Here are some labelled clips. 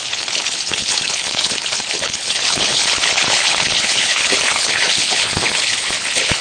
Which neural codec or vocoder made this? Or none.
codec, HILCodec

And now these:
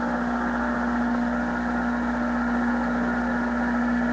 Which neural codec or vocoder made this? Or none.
none